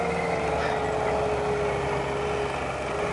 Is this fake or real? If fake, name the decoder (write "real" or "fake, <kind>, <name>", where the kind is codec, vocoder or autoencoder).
real